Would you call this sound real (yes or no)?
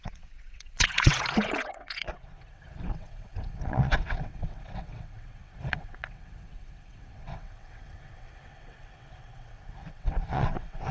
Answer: no